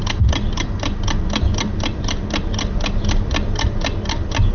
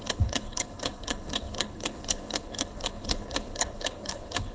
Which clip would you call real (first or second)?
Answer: first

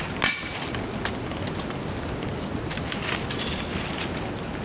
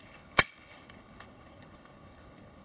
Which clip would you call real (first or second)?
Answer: first